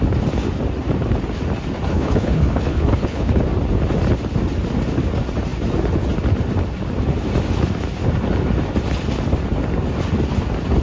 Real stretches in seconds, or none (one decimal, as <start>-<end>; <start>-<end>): 0.0-1.9; 3.4-10.8